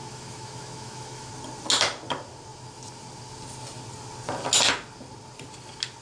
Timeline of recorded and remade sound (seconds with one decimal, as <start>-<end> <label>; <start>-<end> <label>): 0.0-1.3 remade; 1.3-6.0 recorded